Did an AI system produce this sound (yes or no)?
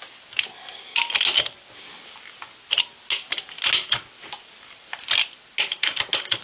no